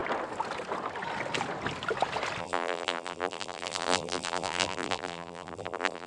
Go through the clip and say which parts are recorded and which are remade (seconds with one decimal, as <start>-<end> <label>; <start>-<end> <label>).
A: 0.0-2.4 recorded; 2.4-6.1 remade